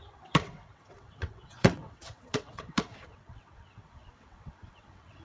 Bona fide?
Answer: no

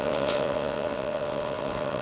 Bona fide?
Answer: no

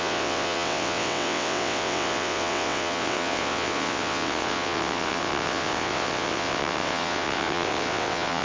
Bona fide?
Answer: no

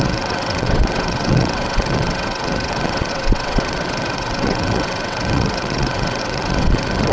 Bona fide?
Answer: no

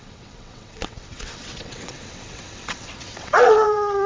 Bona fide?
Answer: no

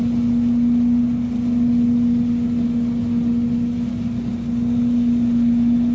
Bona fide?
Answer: yes